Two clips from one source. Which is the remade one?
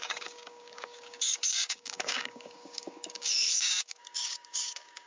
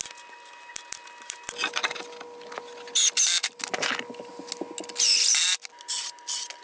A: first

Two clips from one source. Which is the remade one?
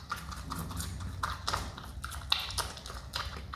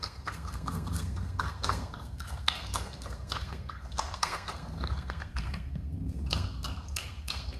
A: second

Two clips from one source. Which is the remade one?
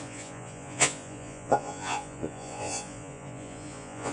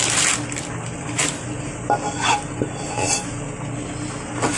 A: first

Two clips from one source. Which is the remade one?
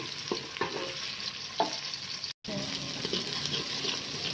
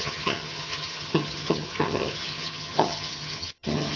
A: second